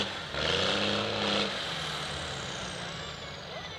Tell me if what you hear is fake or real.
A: real